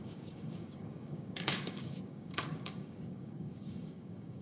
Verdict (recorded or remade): remade